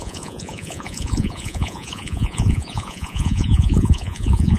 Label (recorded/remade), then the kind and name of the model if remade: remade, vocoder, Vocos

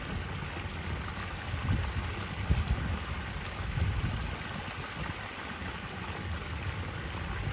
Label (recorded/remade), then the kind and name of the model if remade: recorded